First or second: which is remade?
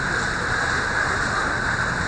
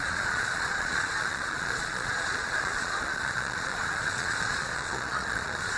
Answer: second